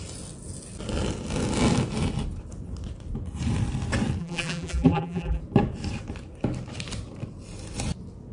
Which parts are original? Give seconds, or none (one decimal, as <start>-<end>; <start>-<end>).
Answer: 0.0-4.2; 5.4-8.3